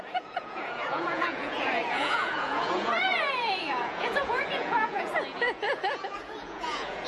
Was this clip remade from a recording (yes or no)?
yes